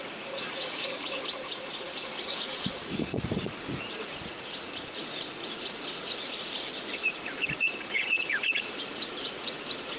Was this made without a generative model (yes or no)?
no